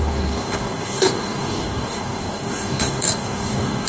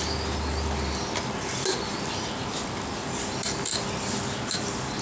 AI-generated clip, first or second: first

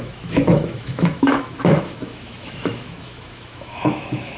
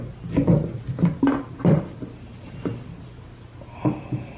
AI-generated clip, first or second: first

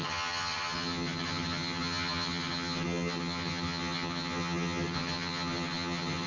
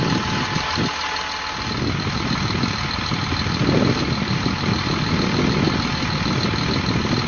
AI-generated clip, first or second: first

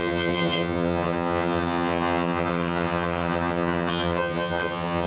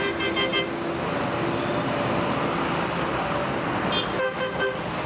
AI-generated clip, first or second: first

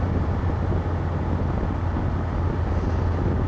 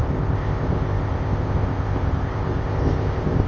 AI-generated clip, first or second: second